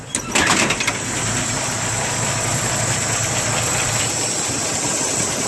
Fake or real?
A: real